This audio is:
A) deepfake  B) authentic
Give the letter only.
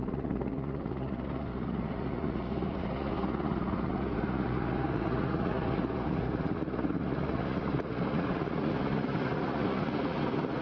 A